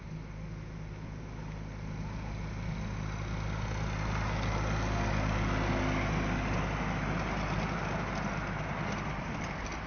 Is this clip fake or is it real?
real